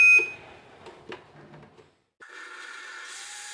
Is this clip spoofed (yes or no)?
no